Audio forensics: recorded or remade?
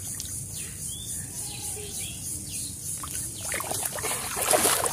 remade